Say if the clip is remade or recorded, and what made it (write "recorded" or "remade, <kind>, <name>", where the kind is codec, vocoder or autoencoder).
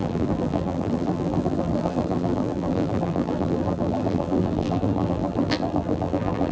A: remade, vocoder, BigVGAN v2